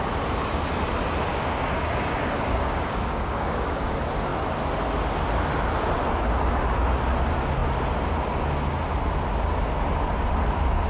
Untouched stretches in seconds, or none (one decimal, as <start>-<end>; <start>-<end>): 0.0-1.3; 3.8-10.9